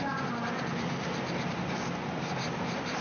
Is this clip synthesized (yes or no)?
no